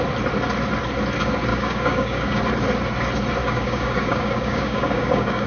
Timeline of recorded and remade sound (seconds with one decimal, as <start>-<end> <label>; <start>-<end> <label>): 0.0-1.5 recorded; 1.5-2.4 remade; 2.4-3.4 recorded; 3.4-5.5 remade